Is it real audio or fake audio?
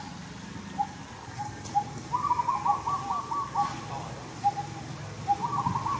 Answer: real